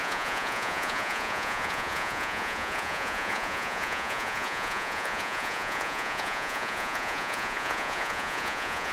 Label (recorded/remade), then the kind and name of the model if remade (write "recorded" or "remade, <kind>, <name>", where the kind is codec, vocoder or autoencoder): remade, vocoder, Vocos